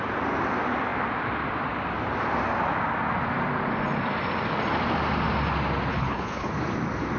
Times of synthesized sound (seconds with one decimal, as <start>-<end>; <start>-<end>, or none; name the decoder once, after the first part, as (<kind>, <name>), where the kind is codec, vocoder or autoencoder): 5.9-6.5 (codec, HILCodec)